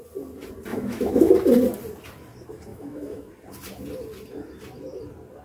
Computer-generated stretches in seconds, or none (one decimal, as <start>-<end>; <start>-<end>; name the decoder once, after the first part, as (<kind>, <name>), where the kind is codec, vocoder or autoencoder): 0.7-1.3 (autoencoder, DAC-VAE); 2.7-3.3